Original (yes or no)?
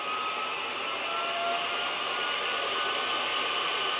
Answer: yes